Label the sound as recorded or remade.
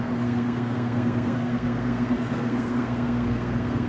remade